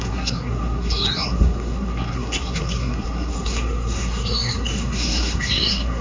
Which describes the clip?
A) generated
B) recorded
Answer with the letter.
A